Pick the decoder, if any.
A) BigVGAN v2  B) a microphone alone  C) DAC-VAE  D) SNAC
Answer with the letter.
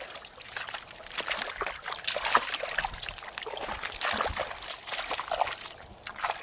B